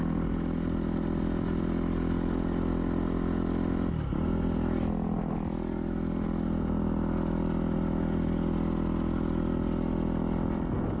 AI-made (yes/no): no